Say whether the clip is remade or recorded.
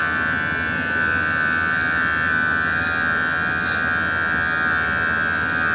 recorded